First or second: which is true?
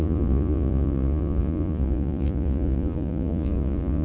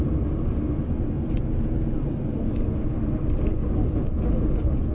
second